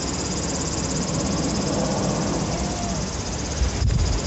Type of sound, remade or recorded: recorded